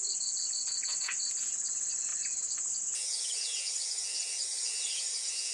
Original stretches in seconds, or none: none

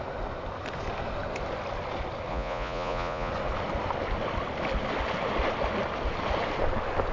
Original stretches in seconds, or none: 0.0-2.3; 3.3-7.1

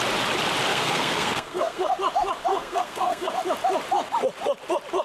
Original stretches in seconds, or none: 0.0-0.7; 1.9-2.5; 3.3-5.0

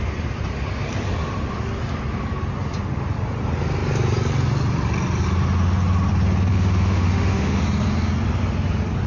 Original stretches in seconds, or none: 0.0-6.5; 7.6-9.1

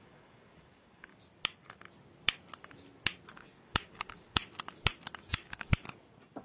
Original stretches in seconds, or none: 1.1-3.3; 4.4-5.3; 5.7-6.4

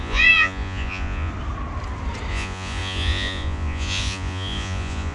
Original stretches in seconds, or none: 1.3-2.3